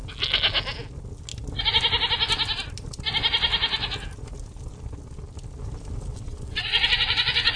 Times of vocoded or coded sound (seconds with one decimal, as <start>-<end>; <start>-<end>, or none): 6.1-7.6